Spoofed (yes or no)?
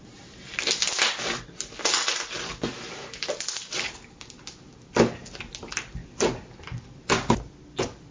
no